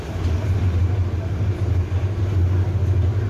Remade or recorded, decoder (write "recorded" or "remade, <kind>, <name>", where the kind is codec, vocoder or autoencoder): recorded